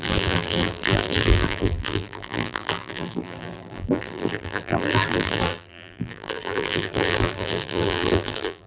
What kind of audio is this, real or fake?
fake